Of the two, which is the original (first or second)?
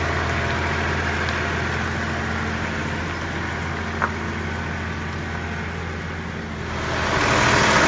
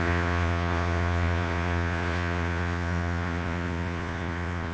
first